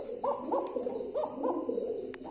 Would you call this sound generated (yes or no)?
no